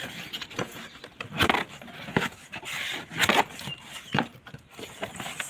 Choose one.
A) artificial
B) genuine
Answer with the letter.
B